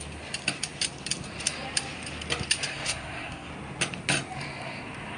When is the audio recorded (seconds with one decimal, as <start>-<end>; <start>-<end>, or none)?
0.0-2.7; 3.5-5.2